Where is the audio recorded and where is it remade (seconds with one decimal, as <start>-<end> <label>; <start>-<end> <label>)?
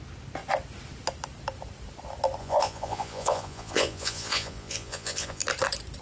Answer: 0.0-2.4 recorded; 2.4-5.4 remade; 5.4-6.0 recorded